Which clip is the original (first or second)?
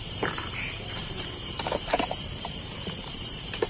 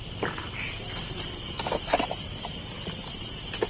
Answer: second